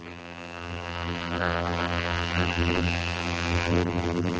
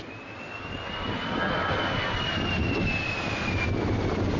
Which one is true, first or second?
second